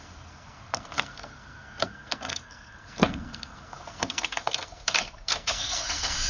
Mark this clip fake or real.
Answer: fake